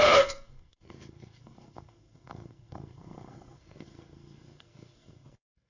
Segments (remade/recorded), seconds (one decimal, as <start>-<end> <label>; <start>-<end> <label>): 0.0-5.7 remade